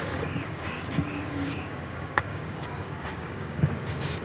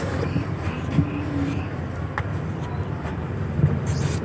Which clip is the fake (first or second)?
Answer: first